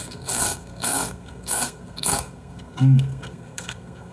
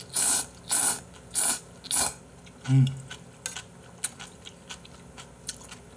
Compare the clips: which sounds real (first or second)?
second